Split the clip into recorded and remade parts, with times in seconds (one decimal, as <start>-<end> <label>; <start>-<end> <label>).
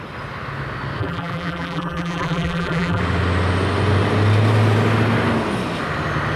0.0-1.0 recorded; 1.0-3.0 remade; 3.0-6.4 recorded